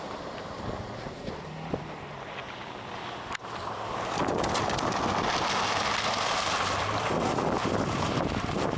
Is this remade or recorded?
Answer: remade